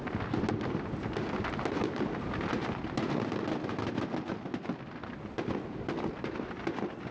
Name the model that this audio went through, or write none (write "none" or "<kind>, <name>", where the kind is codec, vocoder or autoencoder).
none